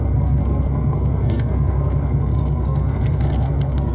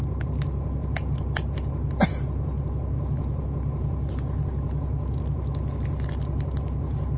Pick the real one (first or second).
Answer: second